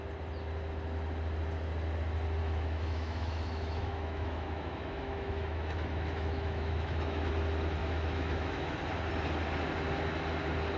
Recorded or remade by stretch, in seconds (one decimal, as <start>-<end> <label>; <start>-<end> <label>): 0.0-2.4 recorded; 2.4-7.3 remade; 7.3-7.8 recorded; 7.8-8.8 remade; 8.8-10.8 recorded